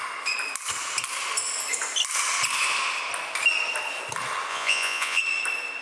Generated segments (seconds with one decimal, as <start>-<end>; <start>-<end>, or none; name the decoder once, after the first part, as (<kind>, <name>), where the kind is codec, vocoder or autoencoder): 4.5-5.2 (vocoder, Vocos)